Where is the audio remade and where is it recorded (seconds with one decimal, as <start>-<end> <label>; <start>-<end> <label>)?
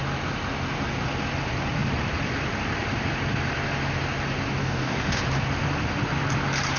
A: 0.0-4.6 recorded; 4.6-5.2 remade; 5.2-6.8 recorded